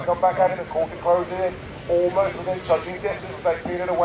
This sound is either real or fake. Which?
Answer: real